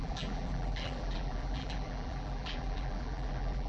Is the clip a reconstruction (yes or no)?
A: yes